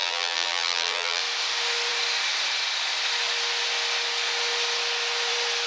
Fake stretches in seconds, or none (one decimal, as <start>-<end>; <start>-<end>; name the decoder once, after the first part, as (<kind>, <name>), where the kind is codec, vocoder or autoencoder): 0.0-1.2 (vocoder, BigVGAN v2)